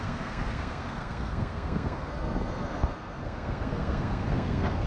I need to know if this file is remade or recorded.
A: remade